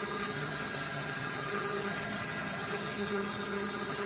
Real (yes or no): no